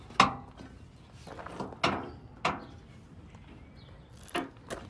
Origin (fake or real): real